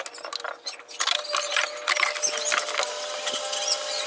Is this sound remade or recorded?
recorded